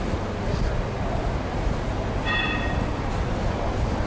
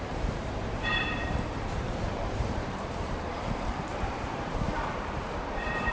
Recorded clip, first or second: first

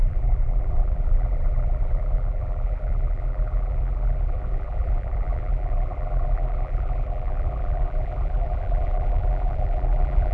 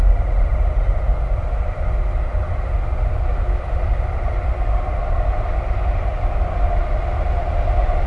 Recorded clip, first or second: second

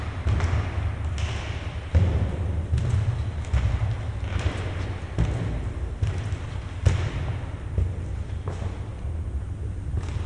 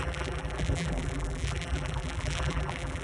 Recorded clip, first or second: first